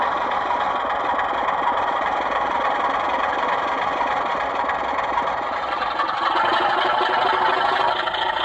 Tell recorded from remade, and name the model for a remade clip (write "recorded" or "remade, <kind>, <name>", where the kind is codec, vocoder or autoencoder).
remade, vocoder, BigVGAN v2